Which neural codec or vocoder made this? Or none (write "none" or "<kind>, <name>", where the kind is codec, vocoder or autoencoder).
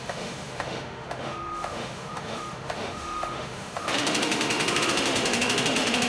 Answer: autoencoder, DAC-VAE